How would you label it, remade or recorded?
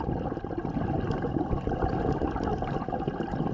recorded